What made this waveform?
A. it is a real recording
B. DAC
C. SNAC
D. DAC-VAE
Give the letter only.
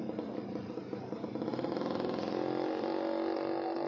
A